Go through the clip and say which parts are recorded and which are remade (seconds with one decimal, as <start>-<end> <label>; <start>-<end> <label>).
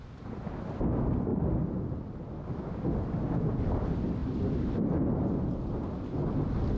0.0-6.8 recorded